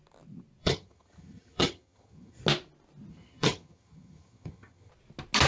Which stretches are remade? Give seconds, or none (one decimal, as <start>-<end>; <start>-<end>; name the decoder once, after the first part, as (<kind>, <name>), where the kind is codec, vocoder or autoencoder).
0.6-2.4 (vocoder, HiFi-GAN); 3.1-4.9